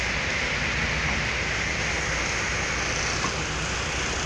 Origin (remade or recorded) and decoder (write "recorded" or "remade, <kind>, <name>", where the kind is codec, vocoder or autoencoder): recorded